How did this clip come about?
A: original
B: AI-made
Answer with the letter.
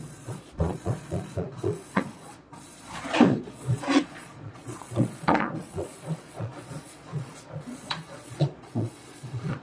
B